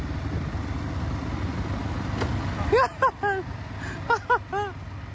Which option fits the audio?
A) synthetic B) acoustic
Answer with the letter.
B